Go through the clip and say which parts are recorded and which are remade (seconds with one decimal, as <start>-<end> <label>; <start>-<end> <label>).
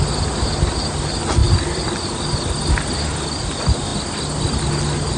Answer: 0.0-5.2 recorded